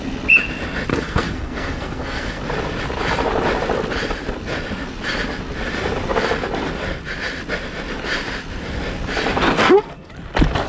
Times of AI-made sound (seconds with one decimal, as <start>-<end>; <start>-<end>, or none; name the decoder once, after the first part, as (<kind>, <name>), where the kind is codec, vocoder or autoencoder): 0.9-2.4 (codec, SNAC); 9.6-10.1